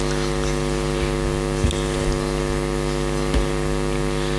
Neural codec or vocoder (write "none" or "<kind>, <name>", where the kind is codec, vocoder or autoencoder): none